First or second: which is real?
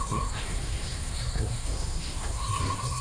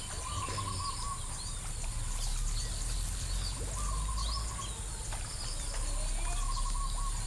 second